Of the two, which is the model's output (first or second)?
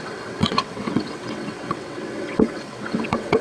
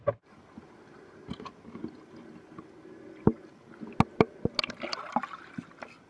first